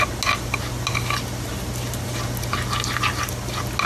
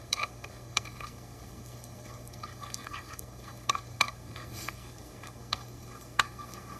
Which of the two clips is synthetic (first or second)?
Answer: second